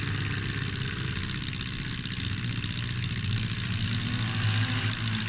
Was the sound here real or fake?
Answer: real